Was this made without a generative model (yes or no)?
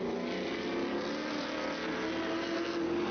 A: yes